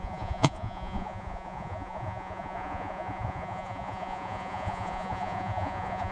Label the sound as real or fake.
fake